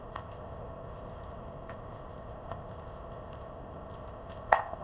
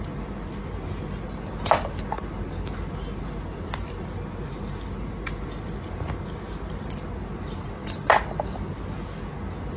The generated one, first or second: first